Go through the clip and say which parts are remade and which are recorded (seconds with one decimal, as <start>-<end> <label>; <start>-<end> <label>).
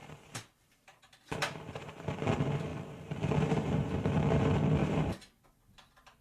0.0-1.7 remade; 1.7-2.7 recorded; 2.7-3.7 remade; 3.7-4.8 recorded; 4.8-5.3 remade; 5.3-6.2 recorded